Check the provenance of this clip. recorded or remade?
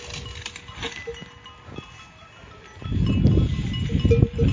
recorded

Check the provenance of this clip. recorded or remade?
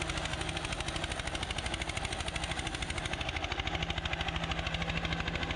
recorded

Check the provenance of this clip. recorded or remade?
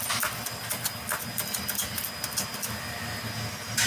recorded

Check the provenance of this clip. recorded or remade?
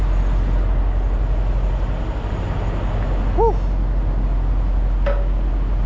recorded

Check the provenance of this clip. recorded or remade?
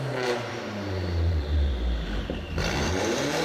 remade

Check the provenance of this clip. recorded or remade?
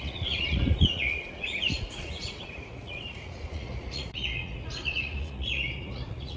remade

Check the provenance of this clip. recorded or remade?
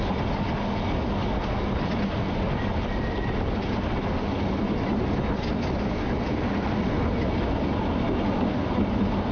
recorded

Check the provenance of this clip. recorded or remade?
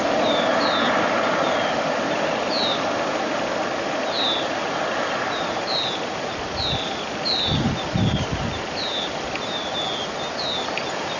recorded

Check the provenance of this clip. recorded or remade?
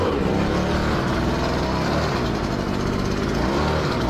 recorded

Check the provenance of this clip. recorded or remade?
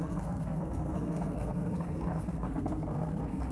remade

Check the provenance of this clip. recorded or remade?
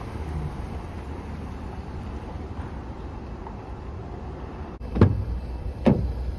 remade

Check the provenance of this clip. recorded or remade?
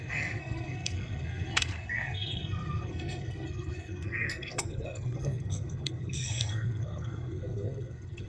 remade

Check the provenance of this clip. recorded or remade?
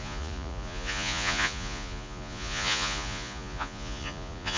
remade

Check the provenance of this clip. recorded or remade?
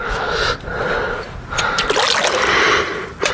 recorded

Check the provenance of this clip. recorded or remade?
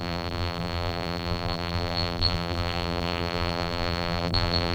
remade